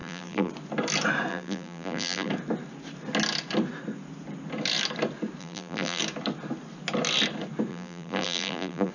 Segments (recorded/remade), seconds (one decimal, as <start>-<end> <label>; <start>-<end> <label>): 0.0-0.5 remade; 0.5-1.3 recorded; 1.3-2.3 remade; 2.3-5.4 recorded; 5.4-6.0 remade; 6.0-7.7 recorded; 7.7-8.9 remade